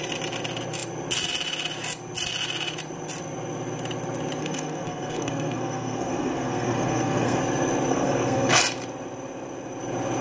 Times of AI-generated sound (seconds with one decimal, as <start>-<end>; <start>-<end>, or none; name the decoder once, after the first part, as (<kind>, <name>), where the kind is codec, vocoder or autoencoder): 4.4-7.4 (codec, SNAC); 7.9-8.6